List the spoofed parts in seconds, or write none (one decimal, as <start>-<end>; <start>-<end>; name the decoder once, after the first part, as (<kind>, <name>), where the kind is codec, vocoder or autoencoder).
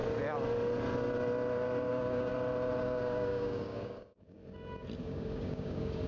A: 1.9-2.3 (codec, DAC); 2.8-4.4; 5.0-6.1